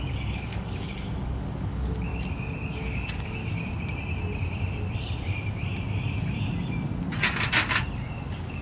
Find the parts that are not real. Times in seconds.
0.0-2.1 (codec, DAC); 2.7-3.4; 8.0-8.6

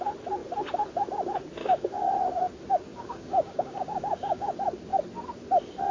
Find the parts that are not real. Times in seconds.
1.6-2.1 (codec, DAC); 2.9-4.5

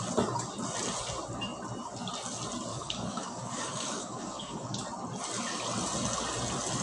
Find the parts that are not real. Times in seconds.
2.7-4.7 (codec, DAC)

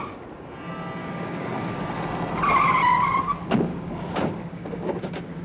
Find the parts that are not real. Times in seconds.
1.0-1.9 (codec, DAC); 3.7-5.4

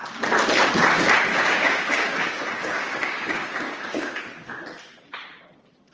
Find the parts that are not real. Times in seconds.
1.3-4.2 (codec, DAC)